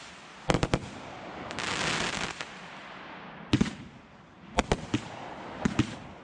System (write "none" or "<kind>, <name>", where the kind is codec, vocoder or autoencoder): none